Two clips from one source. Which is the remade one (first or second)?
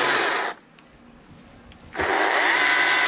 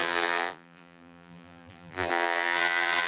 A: second